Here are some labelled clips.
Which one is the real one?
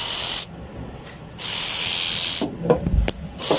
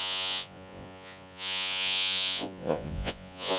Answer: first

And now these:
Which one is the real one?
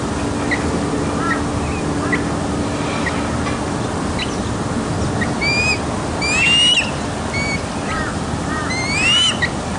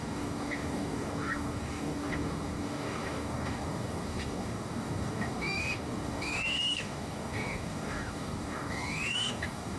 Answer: first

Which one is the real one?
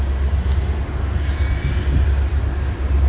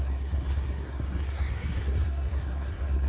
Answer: first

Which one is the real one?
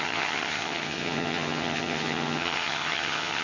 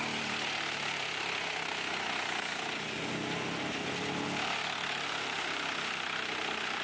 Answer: second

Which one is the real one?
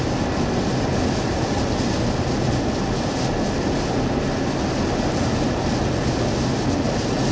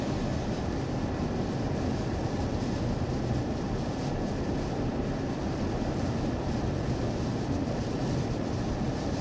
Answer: first